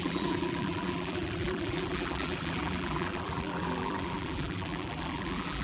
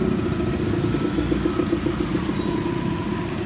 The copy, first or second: first